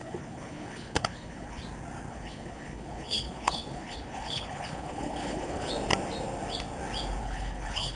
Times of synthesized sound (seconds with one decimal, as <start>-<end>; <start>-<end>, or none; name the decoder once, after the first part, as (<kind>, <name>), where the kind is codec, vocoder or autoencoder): 0.0-1.6 (codec, HILCodec); 2.1-5.7; 7.2-8.0